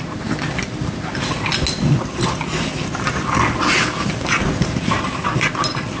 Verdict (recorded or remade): recorded